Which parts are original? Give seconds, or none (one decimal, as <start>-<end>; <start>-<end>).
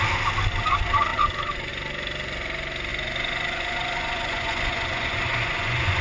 0.0-2.9